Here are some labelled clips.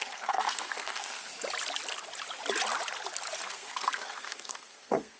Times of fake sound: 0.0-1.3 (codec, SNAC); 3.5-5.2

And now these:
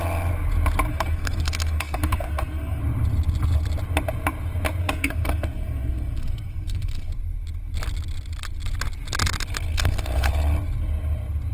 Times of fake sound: 0.9-2.8 (codec, SNAC); 4.8-7.1; 9.7-10.3

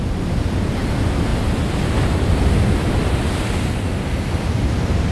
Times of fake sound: none

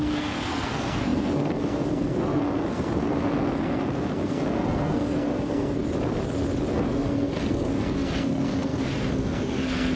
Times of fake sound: 0.0-5.8 (codec, SNAC); 6.7-10.0

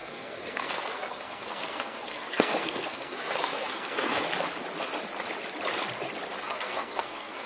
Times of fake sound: 0.0-4.3 (codec, SNAC); 6.4-7.5

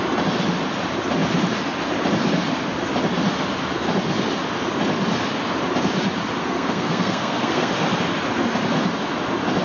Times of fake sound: 6.4-7.7 (codec, SNAC)

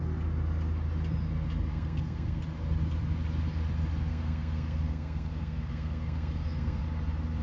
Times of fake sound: 1.7-2.4 (codec, SNAC); 4.1-6.8